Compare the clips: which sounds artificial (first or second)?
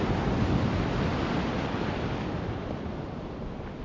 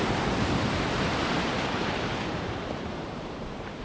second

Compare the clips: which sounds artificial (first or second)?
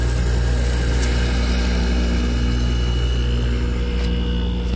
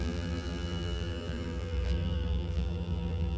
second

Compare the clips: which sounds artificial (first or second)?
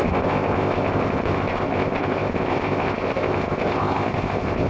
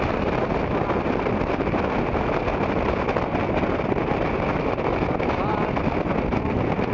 first